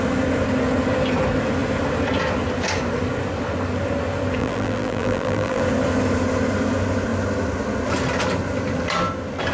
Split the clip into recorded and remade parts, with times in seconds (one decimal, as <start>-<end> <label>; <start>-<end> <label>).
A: 0.0-4.4 recorded; 4.4-5.6 remade; 5.6-9.5 recorded